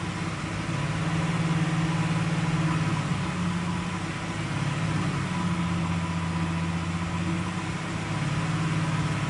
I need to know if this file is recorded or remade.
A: recorded